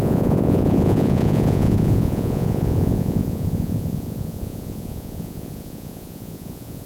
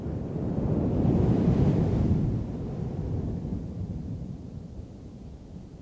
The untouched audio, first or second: second